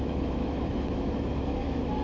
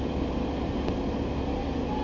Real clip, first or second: second